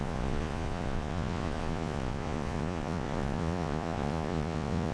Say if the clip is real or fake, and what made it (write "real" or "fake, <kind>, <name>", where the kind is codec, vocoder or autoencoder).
fake, vocoder, Vocos